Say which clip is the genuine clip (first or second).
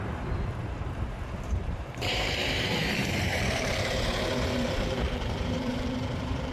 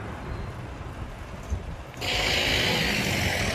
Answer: second